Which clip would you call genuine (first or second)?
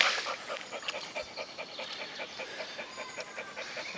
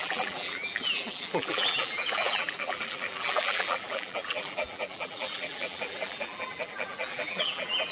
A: first